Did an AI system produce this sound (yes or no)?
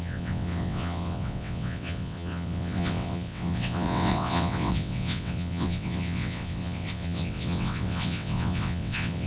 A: yes